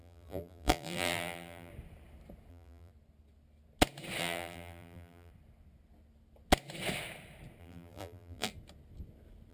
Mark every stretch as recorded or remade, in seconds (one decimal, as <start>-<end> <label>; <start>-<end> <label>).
0.0-1.7 remade; 1.7-2.5 recorded; 2.5-2.9 remade; 2.9-4.2 recorded; 4.2-5.3 remade; 5.3-7.6 recorded; 7.6-8.5 remade; 8.5-9.5 recorded